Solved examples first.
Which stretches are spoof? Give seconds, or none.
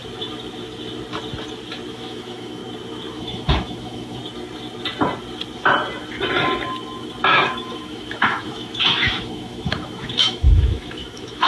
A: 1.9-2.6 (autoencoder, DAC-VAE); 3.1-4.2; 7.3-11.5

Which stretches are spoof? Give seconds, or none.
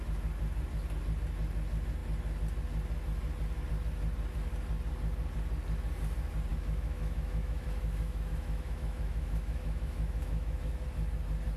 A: 6.5-10.7 (autoencoder, DAC-VAE)